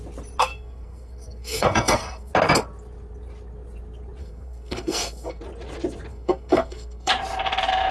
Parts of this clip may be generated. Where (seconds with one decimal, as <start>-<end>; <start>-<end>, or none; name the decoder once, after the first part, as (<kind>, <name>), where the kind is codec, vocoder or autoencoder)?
0.4-2.3 (codec, SNAC); 4.2-5.4; 6.1-7.1